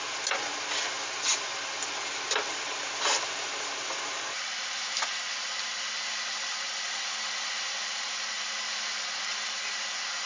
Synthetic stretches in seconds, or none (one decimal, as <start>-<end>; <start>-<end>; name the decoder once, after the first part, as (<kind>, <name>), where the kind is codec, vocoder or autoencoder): none

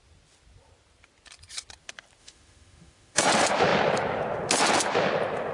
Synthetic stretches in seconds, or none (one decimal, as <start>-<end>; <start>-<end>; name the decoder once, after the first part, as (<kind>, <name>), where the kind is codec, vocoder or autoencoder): 2.2-3.2 (autoencoder, DAC-VAE)